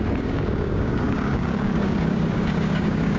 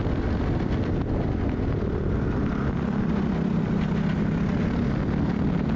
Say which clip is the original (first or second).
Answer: second